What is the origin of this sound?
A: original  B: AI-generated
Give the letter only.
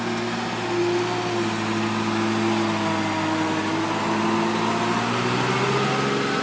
A